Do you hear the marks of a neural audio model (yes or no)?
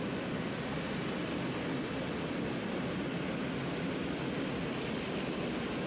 no